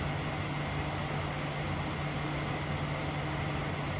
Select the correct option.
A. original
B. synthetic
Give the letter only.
A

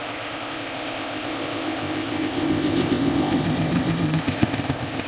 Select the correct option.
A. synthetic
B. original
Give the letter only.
A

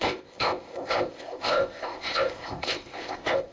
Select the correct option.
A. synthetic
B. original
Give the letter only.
A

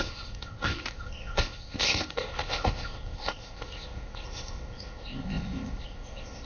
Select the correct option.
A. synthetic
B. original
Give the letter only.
A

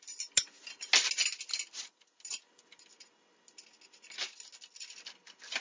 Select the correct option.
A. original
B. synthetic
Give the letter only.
A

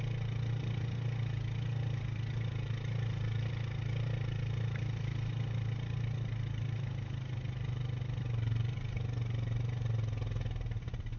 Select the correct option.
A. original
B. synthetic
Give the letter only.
A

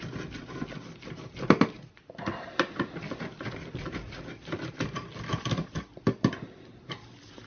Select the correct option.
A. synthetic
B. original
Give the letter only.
B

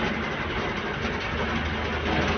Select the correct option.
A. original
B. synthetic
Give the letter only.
A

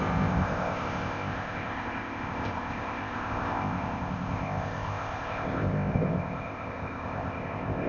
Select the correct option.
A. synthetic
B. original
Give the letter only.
A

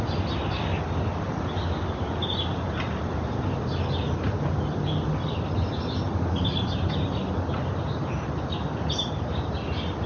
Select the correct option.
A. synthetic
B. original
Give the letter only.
B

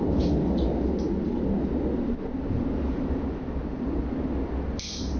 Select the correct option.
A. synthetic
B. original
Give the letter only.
B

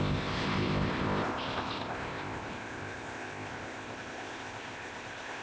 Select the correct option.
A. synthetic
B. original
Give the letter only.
A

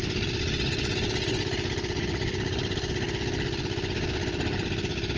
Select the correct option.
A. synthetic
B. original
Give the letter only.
B